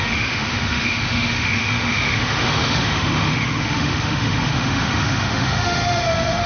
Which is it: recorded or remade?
remade